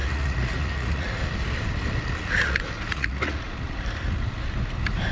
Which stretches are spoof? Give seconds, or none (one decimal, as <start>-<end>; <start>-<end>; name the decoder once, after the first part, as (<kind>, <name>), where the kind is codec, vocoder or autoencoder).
0.0-1.2 (vocoder, Vocos); 2.2-3.5